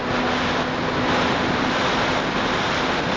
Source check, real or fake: real